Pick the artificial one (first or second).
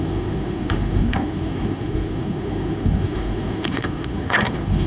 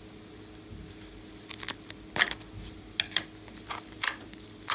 first